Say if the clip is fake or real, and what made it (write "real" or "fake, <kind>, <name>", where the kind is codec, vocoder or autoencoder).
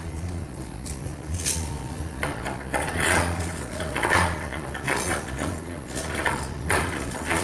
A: fake, vocoder, Vocos